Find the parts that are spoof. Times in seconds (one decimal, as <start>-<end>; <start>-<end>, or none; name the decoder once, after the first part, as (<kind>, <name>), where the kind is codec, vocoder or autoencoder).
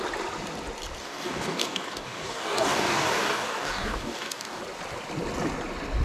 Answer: 1.0-4.6 (codec, DAC)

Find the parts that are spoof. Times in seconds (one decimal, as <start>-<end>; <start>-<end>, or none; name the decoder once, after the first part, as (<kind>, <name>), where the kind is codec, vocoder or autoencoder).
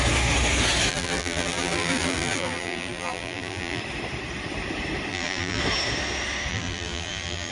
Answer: 0.9-3.8 (vocoder, BigVGAN v2); 5.1-5.6; 6.5-7.5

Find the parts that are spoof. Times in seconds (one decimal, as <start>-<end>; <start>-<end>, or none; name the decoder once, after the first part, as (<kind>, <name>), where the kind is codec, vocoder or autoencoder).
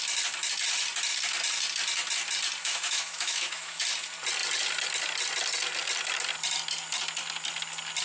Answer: 2.6-3.8 (autoencoder, DAC-VAE)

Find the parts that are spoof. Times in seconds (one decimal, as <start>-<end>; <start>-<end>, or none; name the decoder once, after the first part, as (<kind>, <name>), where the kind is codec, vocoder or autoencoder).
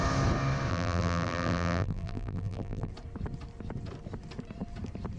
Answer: 0.7-2.9 (vocoder, BigVGAN v2)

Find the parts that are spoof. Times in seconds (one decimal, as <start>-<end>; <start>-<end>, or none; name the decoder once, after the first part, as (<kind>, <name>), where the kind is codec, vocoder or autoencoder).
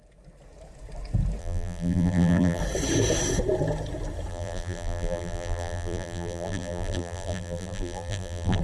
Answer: 1.4-2.6 (vocoder, BigVGAN v2); 4.3-8.6